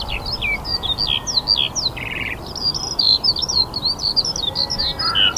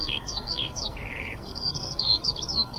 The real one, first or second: first